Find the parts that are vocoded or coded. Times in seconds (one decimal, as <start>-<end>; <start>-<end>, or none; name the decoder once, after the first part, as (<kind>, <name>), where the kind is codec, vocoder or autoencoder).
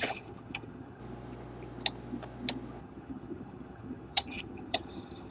0.0-1.0 (vocoder, HiFi-GAN); 2.8-5.3